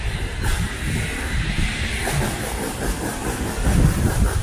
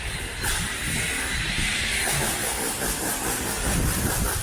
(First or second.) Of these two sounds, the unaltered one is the second